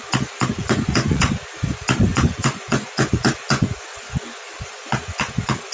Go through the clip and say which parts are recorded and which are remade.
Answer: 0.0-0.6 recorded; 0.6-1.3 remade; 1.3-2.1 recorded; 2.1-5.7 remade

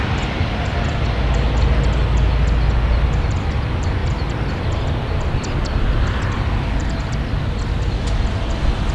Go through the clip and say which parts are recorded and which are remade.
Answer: 0.0-8.9 recorded